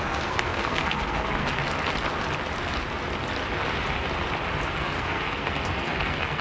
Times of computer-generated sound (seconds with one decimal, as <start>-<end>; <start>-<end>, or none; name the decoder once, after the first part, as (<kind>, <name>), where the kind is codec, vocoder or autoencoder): 0.0-1.6 (codec, SNAC); 4.7-6.4